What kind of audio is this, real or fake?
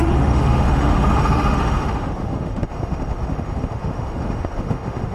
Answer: fake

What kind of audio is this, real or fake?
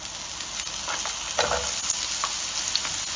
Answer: real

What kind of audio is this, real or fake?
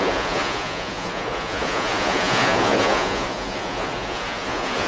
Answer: fake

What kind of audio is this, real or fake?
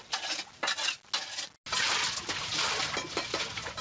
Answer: real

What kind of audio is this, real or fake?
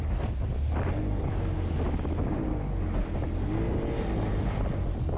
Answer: real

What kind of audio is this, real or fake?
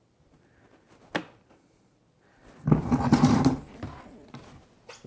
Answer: real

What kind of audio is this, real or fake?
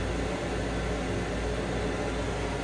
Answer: real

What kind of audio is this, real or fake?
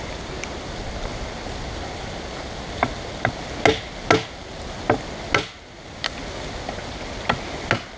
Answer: real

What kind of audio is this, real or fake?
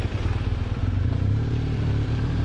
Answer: fake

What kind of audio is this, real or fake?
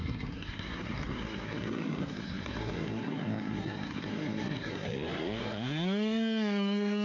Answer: fake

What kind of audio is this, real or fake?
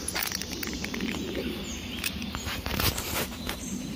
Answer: fake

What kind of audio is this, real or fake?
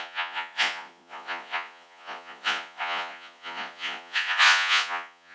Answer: fake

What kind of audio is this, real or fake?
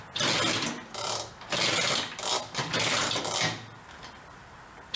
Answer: real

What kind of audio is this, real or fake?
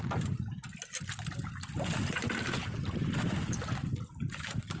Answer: real